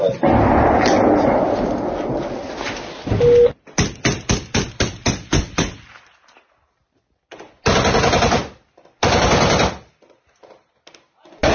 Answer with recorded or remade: recorded